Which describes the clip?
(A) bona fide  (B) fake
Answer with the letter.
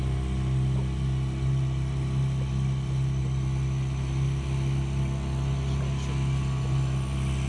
A